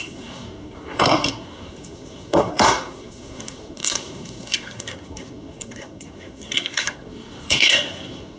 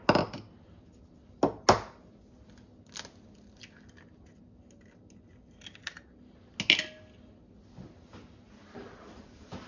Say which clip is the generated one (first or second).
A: first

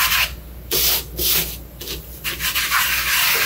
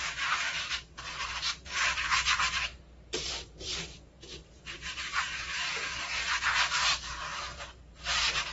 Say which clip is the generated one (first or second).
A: second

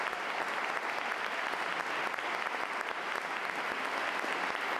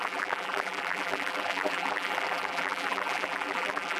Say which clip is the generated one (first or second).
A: second